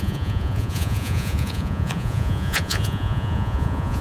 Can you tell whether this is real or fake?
fake